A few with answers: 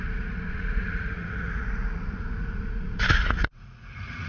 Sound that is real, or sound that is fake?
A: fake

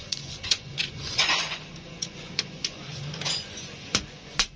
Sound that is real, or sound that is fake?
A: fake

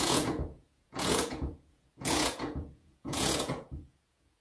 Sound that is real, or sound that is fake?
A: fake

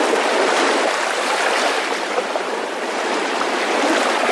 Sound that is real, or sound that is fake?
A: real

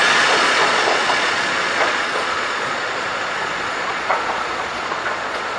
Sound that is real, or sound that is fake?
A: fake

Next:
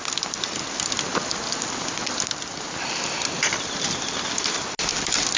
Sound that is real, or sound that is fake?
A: real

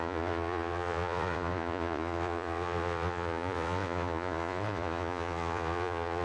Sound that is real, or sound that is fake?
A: fake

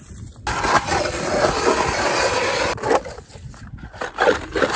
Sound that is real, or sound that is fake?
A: real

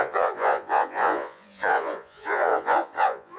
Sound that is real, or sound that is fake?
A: fake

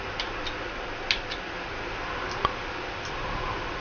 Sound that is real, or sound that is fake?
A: real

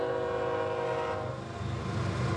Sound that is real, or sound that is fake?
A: real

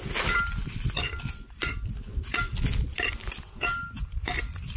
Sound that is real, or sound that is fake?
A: real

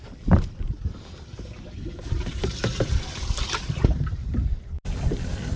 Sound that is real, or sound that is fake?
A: real